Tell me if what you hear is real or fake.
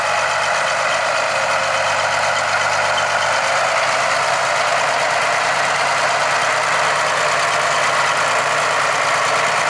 real